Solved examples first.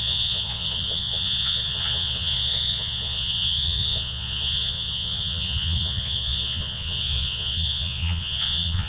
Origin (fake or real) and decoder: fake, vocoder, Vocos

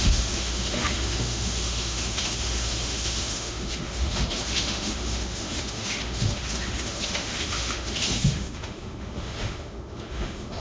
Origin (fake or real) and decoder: fake, autoencoder, DAC-VAE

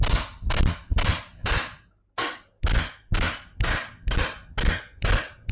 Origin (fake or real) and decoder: real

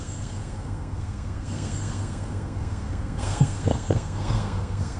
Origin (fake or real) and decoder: fake, codec, SNAC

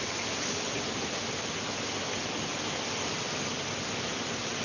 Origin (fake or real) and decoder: real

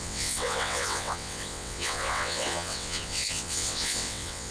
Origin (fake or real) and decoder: fake, vocoder, WaveNeXt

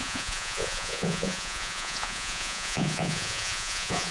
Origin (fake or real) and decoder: fake, vocoder, Vocos